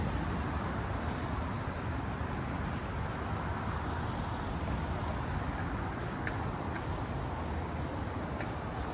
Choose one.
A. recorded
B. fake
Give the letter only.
A